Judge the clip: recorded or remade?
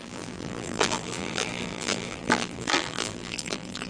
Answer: remade